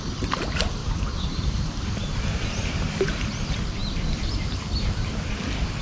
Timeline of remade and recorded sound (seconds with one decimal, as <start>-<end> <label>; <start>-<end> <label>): 0.0-0.8 recorded; 0.8-3.2 remade; 3.2-5.8 recorded